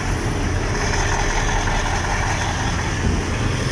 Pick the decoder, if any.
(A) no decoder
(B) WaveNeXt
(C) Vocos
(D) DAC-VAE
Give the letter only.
A